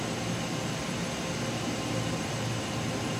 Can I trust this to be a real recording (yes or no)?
yes